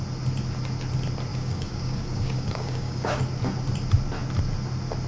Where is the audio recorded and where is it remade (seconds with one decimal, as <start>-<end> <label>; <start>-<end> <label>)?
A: 0.0-1.3 recorded; 1.3-3.2 remade; 3.2-5.1 recorded